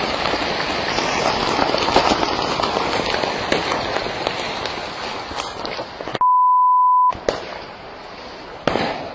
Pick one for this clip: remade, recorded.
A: recorded